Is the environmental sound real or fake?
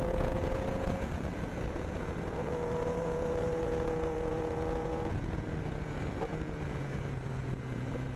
fake